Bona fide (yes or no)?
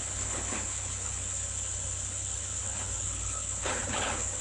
no